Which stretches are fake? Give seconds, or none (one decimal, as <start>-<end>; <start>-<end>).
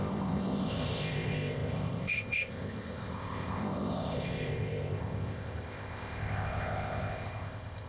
0.0-7.9